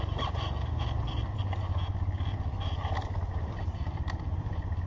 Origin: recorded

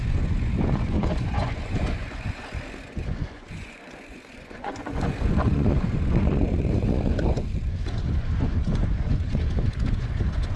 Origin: remade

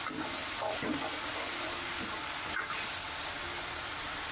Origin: recorded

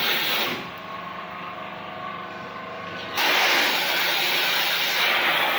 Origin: recorded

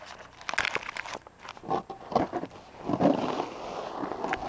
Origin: recorded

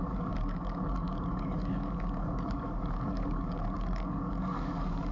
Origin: remade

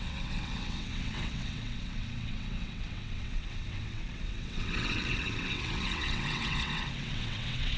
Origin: remade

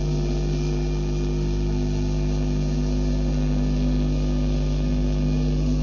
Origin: remade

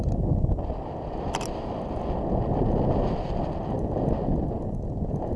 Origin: recorded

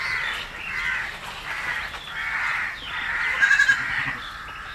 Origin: recorded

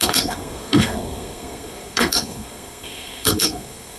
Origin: remade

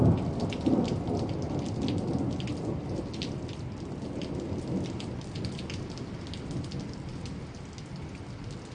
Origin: recorded